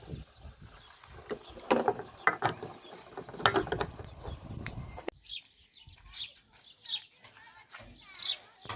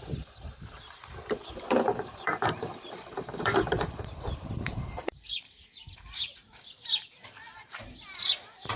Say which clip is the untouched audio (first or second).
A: first